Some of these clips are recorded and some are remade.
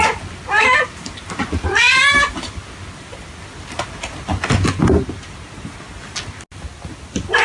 recorded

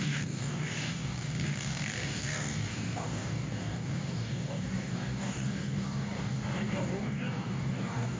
remade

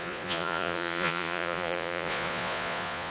remade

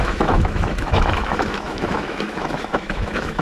remade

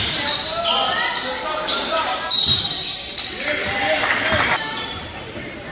remade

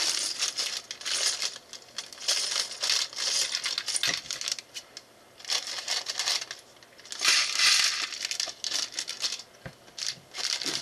recorded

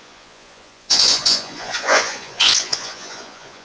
remade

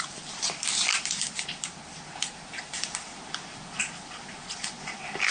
remade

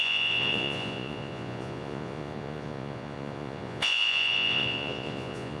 remade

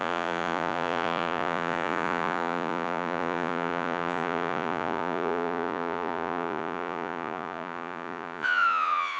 remade